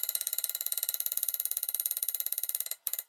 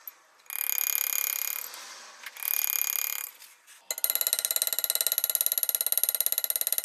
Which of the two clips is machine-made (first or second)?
first